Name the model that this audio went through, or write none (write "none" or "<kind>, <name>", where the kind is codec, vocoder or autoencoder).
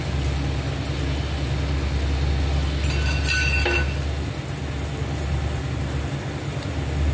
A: none